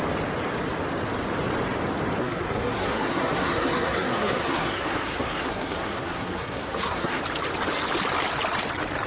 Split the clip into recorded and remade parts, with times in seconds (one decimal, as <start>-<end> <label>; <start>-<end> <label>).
0.0-2.2 recorded; 2.2-7.2 remade; 7.2-9.1 recorded